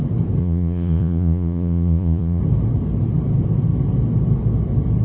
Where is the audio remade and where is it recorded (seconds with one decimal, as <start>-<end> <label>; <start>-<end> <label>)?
0.0-0.4 recorded; 0.4-2.4 remade; 2.4-5.0 recorded